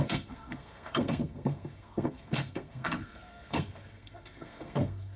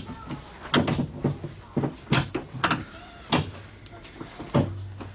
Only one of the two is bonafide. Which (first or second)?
second